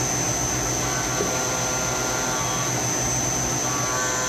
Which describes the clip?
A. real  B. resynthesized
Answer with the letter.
A